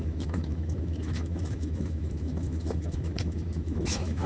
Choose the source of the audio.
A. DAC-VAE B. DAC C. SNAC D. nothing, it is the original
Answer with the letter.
A